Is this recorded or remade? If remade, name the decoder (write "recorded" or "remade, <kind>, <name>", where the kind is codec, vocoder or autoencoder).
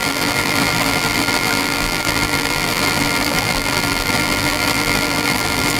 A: remade, vocoder, BigVGAN v2